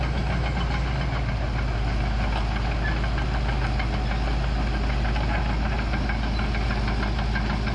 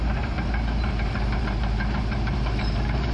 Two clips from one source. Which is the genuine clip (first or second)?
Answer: first